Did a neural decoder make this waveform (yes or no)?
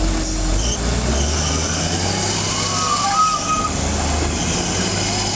no